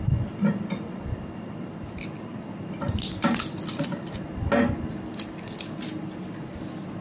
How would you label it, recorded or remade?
recorded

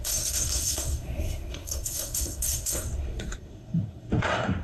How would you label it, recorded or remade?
remade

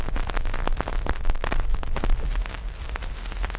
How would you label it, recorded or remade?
recorded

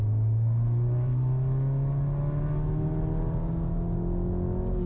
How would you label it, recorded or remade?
recorded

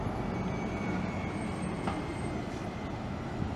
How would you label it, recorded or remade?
recorded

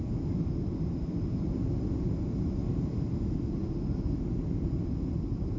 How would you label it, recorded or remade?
recorded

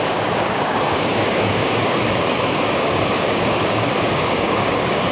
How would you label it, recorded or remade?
remade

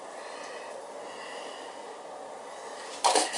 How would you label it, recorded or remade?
recorded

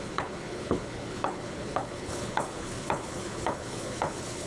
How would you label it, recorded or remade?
remade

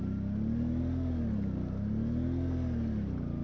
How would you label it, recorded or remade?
recorded